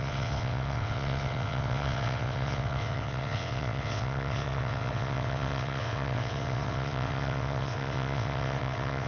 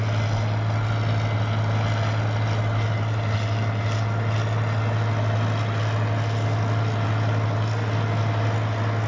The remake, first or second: first